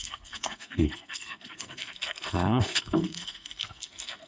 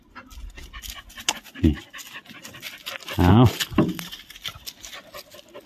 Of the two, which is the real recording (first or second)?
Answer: second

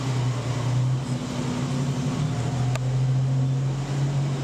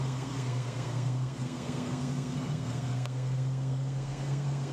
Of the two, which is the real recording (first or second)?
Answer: first